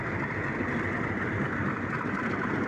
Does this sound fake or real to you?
real